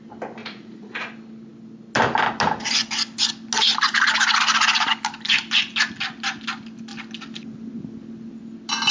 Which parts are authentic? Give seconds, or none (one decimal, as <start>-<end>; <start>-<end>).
0.0-0.4; 1.1-8.9